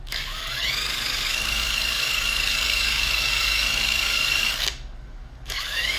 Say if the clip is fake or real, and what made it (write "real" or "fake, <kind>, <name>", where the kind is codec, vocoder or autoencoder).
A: fake, codec, DAC